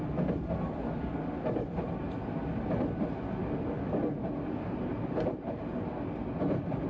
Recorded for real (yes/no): yes